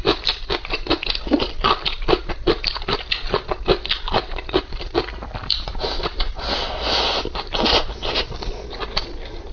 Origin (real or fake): real